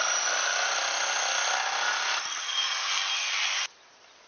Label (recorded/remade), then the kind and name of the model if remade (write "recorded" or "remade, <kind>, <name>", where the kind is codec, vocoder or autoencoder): recorded